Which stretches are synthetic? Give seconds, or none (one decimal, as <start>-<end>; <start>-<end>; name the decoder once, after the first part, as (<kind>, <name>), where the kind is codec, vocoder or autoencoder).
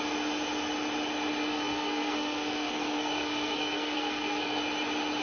1.5-4.6 (codec, SNAC)